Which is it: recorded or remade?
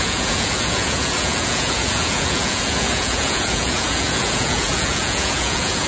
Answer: remade